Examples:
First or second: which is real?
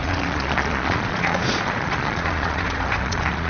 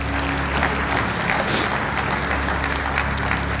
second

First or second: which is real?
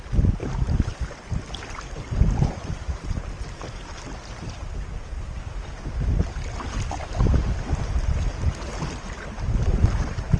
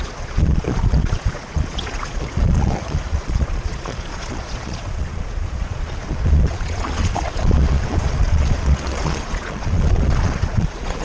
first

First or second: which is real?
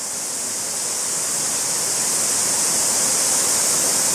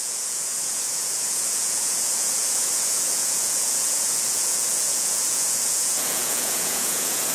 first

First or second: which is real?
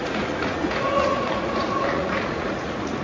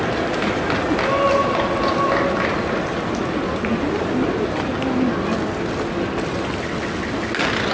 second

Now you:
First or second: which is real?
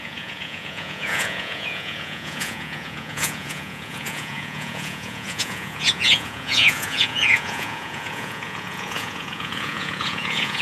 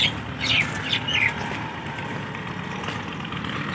second